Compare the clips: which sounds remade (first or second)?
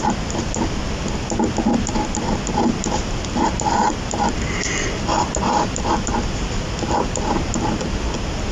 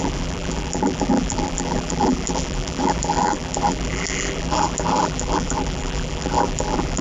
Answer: second